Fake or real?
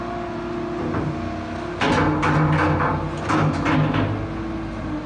real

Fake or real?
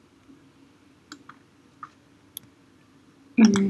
real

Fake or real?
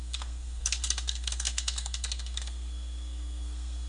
fake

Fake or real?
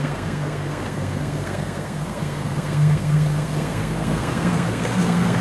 fake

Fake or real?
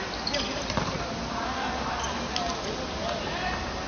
real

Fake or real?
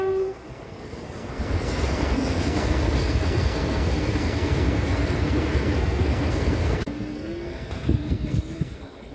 fake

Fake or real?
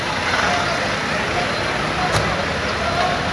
real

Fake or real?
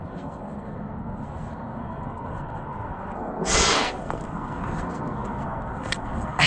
fake